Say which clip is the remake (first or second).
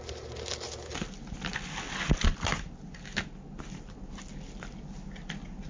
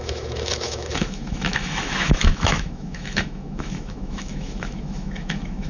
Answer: second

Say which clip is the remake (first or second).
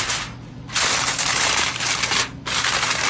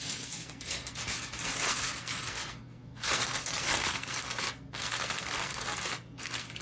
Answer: second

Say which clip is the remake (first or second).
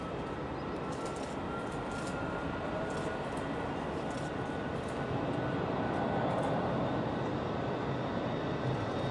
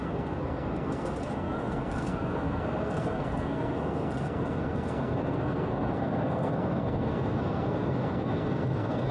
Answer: second